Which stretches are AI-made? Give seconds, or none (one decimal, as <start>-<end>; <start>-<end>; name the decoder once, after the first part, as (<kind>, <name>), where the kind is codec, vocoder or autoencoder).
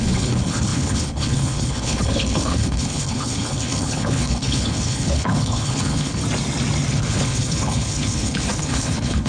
0.0-6.2 (codec, HILCodec); 6.9-9.3